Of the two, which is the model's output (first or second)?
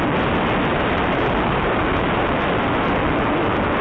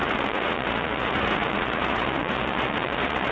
second